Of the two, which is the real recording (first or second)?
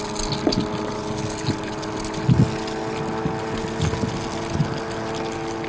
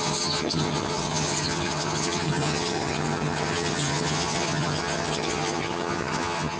first